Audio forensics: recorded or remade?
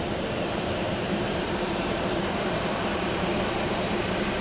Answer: remade